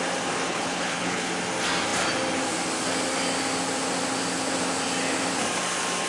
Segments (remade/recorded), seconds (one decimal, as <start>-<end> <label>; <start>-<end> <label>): 0.0-0.5 recorded; 0.5-1.3 remade; 1.3-6.1 recorded